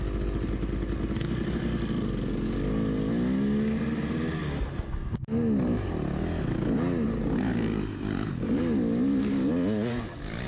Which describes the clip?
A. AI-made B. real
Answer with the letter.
B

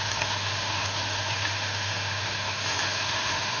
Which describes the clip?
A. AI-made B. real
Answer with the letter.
A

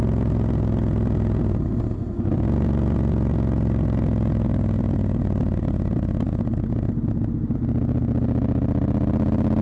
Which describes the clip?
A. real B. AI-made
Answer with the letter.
A